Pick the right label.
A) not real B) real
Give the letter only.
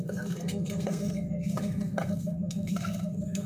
A